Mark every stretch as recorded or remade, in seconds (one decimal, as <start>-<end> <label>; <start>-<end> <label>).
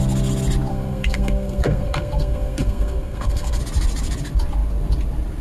0.0-0.7 recorded; 0.7-3.6 remade; 3.6-5.4 recorded